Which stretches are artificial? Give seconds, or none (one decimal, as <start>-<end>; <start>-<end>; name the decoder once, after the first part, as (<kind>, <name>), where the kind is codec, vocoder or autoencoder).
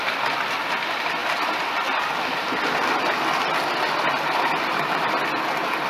1.2-2.1 (vocoder, BigVGAN v2); 4.7-5.4